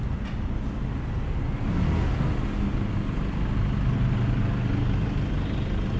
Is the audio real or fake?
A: real